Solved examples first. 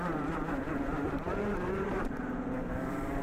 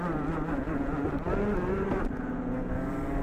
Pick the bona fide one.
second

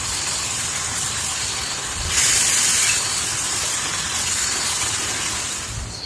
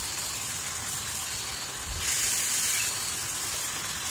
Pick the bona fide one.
second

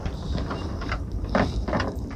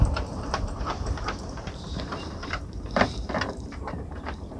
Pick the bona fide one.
first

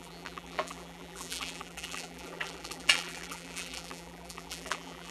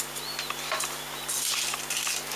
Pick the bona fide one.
second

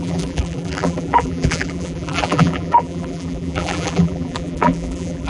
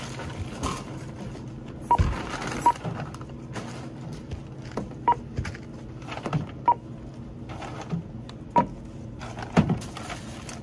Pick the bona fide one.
second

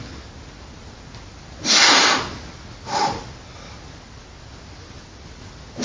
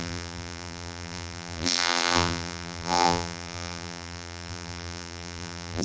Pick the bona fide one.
first